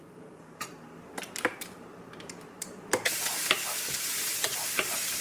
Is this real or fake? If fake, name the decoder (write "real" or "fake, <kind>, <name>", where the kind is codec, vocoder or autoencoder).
fake, vocoder, BigVGAN v2